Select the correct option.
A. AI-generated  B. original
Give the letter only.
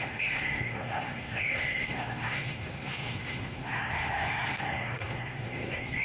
A